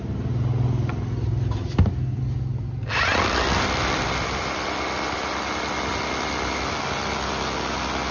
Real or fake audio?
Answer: real